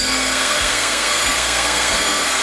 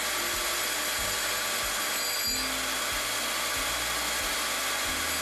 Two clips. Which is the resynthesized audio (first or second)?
first